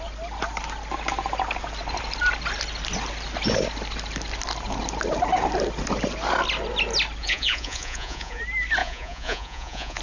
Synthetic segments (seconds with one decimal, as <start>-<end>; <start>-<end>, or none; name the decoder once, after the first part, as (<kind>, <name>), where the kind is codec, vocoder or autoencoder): 7.2-8.4 (vocoder, Vocos); 8.8-10.0